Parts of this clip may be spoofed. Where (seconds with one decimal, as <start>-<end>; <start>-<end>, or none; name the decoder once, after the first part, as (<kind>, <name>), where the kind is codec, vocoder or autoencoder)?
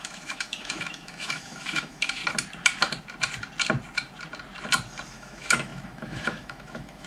0.0-2.2 (autoencoder, DAC-VAE); 5.1-7.1